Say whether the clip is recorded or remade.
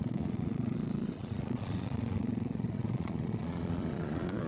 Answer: remade